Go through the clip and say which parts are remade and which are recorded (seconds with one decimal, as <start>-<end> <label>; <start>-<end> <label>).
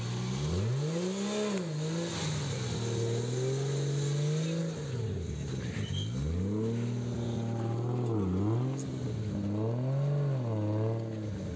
0.0-11.6 recorded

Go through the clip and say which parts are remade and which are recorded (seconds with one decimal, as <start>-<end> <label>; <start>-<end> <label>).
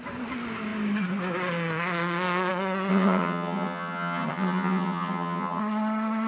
0.0-2.9 recorded; 2.9-5.6 remade; 5.6-6.3 recorded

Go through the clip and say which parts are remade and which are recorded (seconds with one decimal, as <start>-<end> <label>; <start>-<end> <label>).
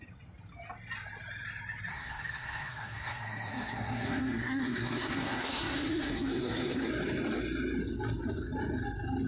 0.0-1.9 recorded; 1.9-6.9 remade; 6.9-9.3 recorded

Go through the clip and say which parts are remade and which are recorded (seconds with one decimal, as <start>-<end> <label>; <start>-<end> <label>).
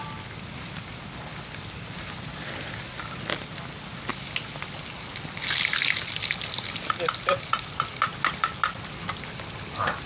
0.0-10.1 recorded